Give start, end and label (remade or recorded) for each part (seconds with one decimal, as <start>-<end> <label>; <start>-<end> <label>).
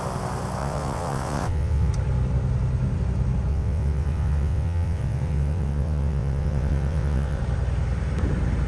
0.0-0.6 recorded; 0.6-1.9 remade; 1.9-3.5 recorded; 3.5-7.4 remade; 7.4-8.7 recorded